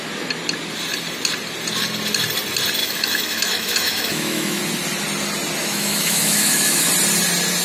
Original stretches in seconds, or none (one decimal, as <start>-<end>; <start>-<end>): 0.0-2.8; 4.6-5.6; 6.9-7.6